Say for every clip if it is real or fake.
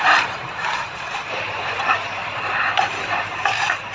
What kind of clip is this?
fake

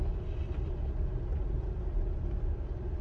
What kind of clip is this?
real